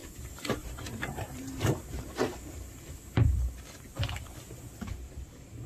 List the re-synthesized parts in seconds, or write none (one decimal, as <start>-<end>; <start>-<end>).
0.0-0.5; 1.1-3.6